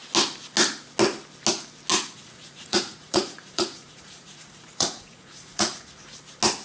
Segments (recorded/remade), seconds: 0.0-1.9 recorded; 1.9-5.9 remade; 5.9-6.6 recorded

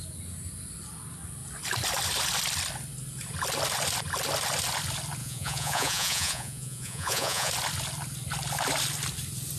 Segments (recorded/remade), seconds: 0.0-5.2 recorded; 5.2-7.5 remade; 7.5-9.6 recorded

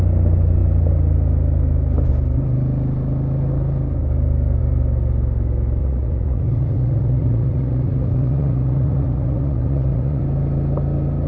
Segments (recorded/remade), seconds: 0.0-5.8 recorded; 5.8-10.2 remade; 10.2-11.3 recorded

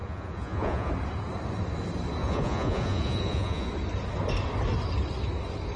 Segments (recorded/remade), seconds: 0.0-0.9 remade; 0.9-2.2 recorded; 2.2-3.7 remade; 3.7-5.8 recorded

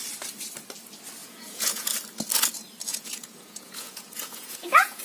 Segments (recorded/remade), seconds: 0.0-1.2 recorded; 1.2-1.9 remade; 1.9-2.9 recorded; 2.9-5.0 remade

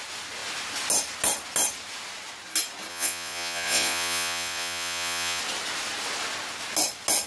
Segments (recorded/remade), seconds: 0.0-2.9 recorded; 2.9-5.4 remade; 5.4-7.3 recorded